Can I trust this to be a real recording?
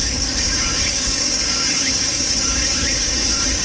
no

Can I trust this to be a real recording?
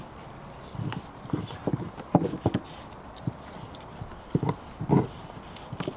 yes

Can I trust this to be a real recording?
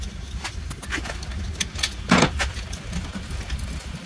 yes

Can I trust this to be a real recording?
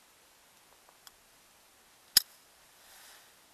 yes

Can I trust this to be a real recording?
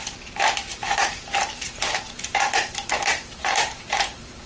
no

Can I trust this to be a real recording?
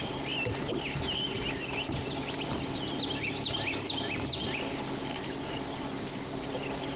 yes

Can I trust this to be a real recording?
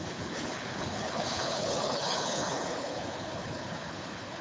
no